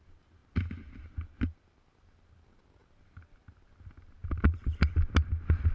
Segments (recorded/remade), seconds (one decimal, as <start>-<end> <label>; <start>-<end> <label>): 0.0-5.7 recorded